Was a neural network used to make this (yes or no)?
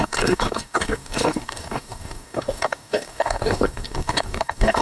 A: yes